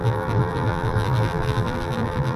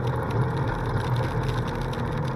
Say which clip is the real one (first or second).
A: second